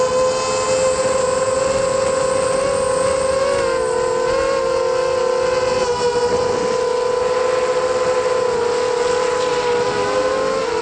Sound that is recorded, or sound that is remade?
recorded